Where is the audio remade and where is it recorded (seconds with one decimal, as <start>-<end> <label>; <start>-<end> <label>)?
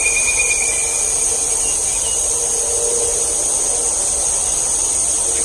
0.0-5.4 recorded